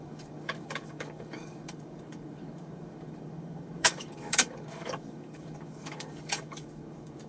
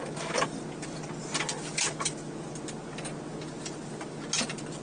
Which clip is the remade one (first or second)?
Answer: first